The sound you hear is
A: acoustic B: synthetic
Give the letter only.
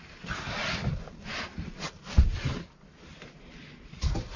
A